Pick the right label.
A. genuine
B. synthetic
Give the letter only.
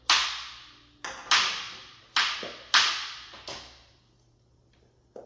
A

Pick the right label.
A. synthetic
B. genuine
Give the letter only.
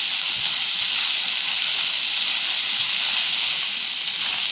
B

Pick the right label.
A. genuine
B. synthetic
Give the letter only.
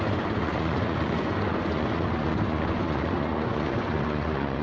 B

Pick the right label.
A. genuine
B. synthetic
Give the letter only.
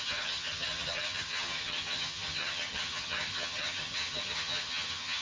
B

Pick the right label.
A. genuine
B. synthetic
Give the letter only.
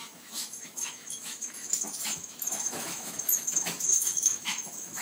B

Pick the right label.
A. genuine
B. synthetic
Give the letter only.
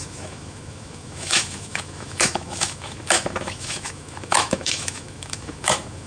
B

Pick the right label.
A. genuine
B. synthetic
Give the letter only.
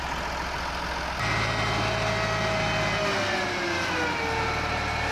A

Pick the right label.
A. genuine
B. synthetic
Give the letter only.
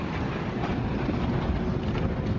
A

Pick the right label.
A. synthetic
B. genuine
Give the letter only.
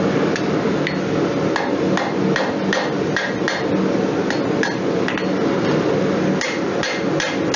B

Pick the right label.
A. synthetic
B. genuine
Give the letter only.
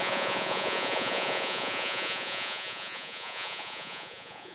A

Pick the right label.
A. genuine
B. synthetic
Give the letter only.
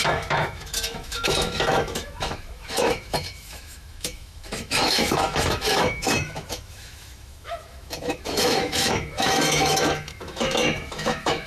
B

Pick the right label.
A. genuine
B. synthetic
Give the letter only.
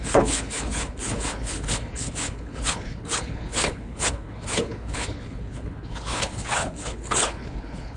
B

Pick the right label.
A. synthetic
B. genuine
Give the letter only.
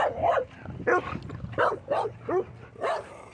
B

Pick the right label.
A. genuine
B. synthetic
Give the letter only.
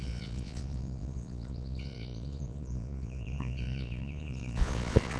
B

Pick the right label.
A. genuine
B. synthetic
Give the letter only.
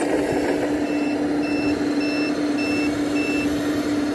A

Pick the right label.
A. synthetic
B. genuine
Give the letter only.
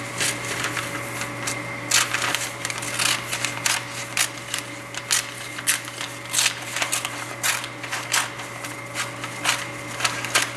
B